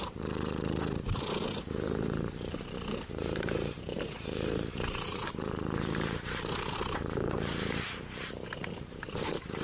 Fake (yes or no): yes